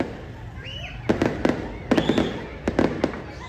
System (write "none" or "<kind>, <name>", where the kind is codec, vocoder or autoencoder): none